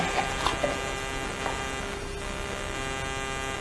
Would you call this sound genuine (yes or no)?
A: yes